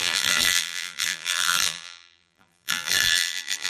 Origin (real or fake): fake